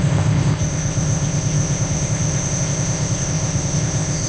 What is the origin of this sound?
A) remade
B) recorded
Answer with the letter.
A